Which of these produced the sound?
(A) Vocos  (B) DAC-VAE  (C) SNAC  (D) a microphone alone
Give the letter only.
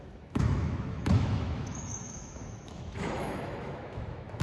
B